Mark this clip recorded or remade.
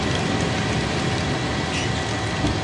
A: recorded